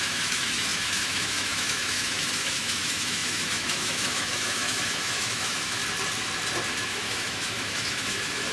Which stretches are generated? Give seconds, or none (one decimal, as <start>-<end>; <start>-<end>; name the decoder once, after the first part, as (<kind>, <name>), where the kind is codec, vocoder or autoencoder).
0.0-5.8 (autoencoder, DAC-VAE); 6.8-8.5